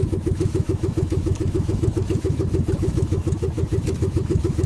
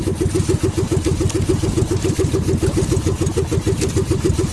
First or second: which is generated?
first